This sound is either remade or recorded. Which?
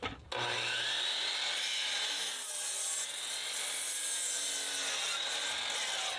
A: recorded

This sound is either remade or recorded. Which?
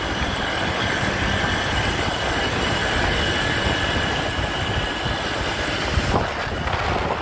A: recorded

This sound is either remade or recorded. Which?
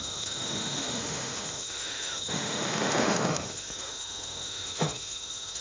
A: remade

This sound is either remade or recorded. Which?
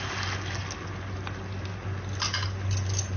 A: recorded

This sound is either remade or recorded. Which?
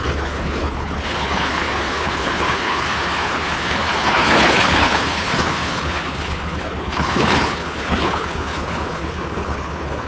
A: remade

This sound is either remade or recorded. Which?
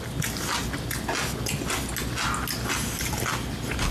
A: recorded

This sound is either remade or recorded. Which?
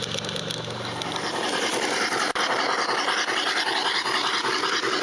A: recorded